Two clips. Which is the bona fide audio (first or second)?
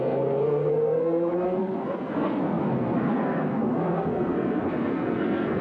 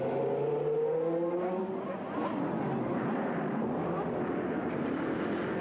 second